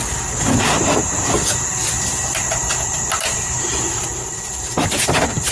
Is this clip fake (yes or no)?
no